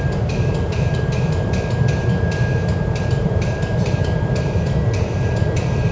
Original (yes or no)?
no